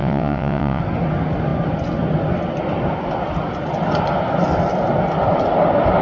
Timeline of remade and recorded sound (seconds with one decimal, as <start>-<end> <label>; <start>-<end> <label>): 0.0-0.8 remade; 0.8-6.0 recorded